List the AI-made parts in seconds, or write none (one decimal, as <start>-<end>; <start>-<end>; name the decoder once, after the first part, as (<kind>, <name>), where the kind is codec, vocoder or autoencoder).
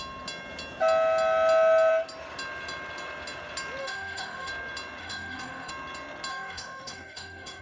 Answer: 3.8-4.5 (autoencoder, DAC-VAE); 5.0-5.7; 6.3-7.6